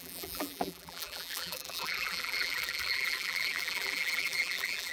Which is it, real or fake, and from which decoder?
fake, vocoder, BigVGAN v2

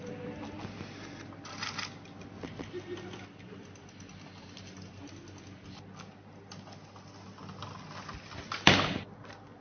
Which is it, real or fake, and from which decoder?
real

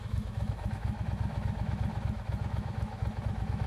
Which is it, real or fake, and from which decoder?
fake, autoencoder, DAC-VAE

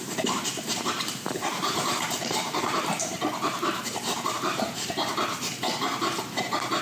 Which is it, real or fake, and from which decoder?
fake, vocoder, BigVGAN v2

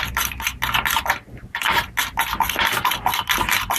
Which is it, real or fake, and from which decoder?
real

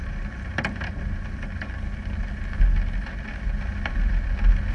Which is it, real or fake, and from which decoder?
real